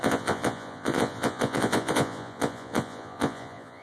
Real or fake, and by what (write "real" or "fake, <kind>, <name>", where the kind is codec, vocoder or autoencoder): fake, vocoder, Vocos